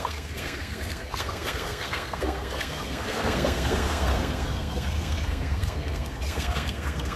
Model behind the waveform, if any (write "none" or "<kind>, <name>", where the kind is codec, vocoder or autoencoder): codec, SNAC